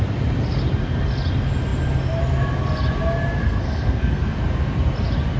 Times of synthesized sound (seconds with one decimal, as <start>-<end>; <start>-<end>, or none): 3.4-4.4